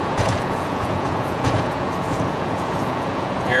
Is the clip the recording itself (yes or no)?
no